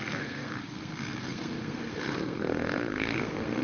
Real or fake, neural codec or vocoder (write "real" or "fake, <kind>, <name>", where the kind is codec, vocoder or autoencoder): fake, codec, SNAC